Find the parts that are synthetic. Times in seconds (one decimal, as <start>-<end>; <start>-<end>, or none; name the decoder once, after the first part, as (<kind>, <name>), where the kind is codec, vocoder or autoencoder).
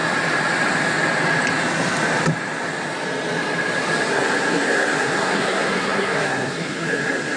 4.1-7.4 (codec, SNAC)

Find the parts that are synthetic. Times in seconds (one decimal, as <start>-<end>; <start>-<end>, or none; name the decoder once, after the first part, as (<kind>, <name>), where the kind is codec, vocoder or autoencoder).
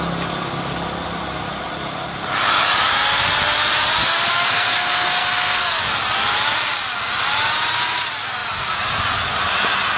4.3-5.8 (codec, SNAC)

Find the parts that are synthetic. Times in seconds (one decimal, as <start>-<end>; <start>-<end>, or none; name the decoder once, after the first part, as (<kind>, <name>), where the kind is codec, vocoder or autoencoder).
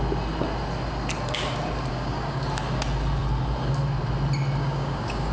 1.9-2.4 (codec, DAC); 4.6-5.3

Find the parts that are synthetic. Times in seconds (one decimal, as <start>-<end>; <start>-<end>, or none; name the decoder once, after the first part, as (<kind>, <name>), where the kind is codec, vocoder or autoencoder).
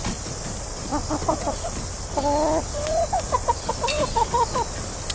none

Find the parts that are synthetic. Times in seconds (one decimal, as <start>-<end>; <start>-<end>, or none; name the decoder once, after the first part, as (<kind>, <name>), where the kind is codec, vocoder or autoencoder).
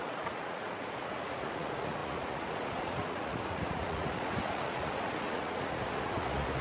0.0-6.6 (vocoder, Vocos)